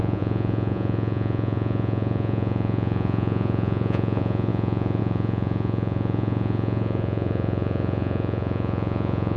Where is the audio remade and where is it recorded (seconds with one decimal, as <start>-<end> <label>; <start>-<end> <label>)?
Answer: 0.0-9.4 remade